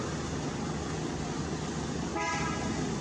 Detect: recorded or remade recorded